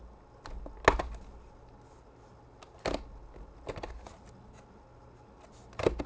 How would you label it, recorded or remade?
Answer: recorded